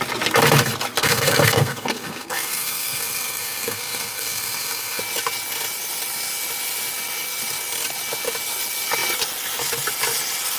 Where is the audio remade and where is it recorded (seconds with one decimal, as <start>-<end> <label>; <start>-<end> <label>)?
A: 0.0-1.0 recorded; 1.0-5.0 remade; 5.0-10.6 recorded